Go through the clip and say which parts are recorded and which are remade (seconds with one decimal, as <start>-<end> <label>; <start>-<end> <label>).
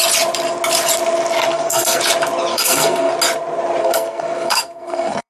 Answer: 0.0-1.5 recorded; 1.5-2.0 remade; 2.0-2.5 recorded; 2.5-3.1 remade; 3.1-3.8 recorded; 3.8-5.3 remade